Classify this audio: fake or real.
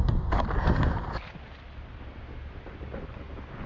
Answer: real